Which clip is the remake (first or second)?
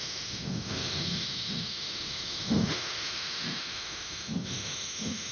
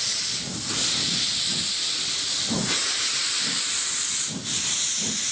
first